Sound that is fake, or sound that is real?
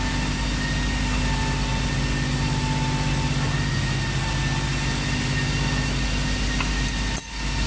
real